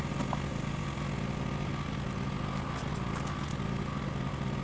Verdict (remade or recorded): recorded